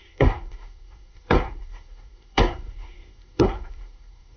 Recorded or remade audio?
remade